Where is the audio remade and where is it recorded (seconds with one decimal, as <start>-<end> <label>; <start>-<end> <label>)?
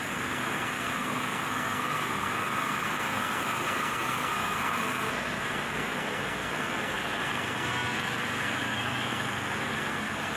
0.0-10.4 remade